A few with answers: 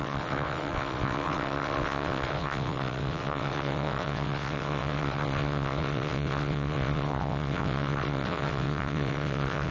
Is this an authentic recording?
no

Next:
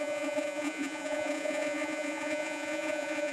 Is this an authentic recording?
no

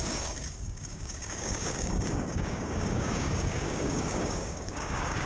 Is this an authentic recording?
no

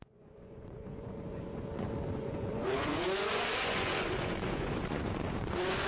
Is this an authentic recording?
no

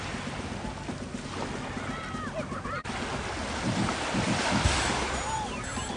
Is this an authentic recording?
yes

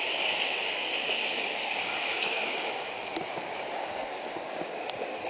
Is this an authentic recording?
no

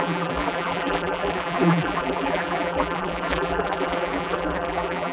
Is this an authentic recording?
no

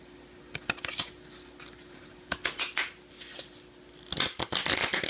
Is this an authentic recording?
yes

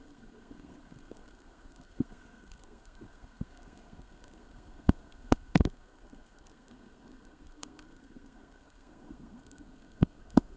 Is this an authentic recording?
no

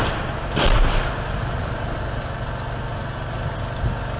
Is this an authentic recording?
yes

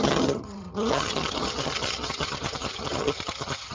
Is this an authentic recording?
no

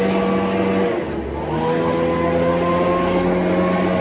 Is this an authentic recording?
yes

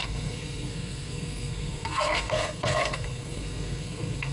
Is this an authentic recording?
no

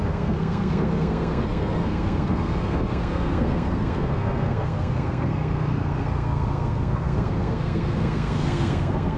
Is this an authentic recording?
no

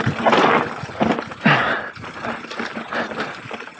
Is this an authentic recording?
yes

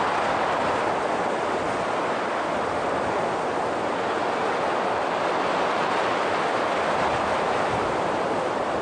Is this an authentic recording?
yes